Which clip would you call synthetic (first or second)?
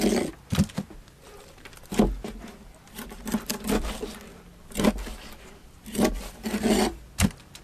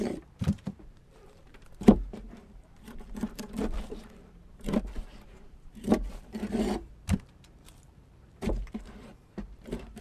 second